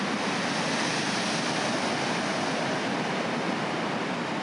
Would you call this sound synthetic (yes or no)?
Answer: no